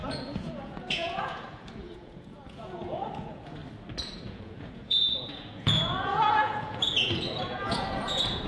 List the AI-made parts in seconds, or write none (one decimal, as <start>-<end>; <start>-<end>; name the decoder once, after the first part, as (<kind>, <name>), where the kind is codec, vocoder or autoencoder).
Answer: 0.0-3.6 (vocoder, Vocos); 4.3-8.5